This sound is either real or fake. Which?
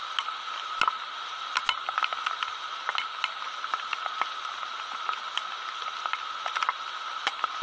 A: real